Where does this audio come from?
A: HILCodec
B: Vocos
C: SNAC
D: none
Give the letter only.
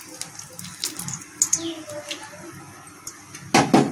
D